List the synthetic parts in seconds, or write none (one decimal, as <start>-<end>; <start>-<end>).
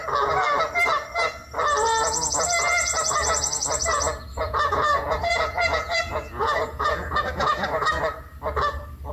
4.3-7.9